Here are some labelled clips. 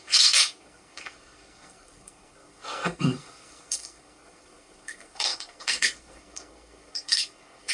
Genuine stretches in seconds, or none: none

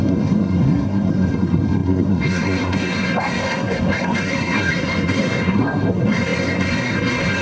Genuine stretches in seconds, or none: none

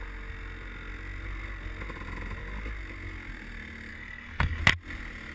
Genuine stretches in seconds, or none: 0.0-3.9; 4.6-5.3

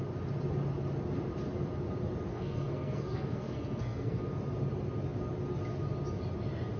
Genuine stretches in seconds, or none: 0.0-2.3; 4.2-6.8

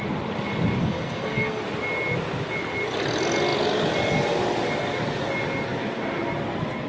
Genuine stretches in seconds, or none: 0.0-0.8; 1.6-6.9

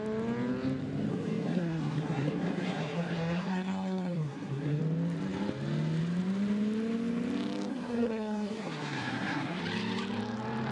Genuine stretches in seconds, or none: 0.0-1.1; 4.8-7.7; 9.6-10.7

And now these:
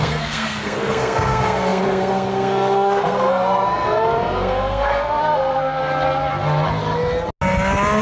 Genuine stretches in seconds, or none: 5.8-8.0

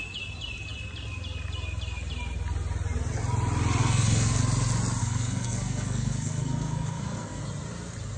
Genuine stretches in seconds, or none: 0.0-3.8; 4.4-5.0; 7.4-8.2